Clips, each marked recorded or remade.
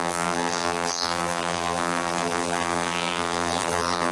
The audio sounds remade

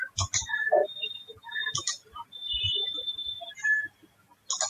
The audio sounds recorded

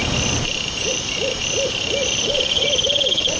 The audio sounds remade